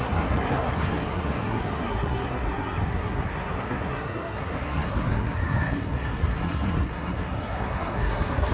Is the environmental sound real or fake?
fake